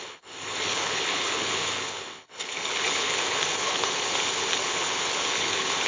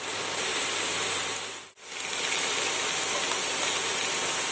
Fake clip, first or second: first